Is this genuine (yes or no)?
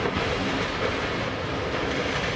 yes